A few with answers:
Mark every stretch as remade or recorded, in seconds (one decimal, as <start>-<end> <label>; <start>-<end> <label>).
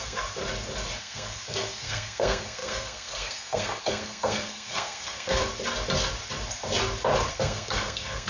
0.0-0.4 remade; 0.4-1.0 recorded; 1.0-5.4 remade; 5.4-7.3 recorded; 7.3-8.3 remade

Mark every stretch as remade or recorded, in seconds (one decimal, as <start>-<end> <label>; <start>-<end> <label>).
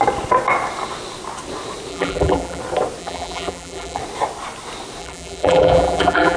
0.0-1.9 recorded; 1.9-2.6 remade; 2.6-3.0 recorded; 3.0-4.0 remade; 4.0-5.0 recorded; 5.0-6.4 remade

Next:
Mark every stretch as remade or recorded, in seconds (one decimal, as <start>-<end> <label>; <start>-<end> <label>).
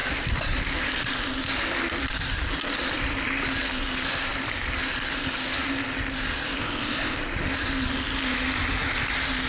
0.0-6.6 recorded; 6.6-7.2 remade; 7.2-9.5 recorded